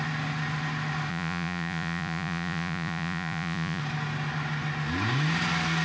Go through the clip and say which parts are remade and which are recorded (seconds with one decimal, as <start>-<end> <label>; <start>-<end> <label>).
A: 0.0-1.1 recorded; 1.1-3.8 remade; 3.8-5.8 recorded